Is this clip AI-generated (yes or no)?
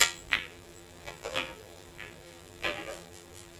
yes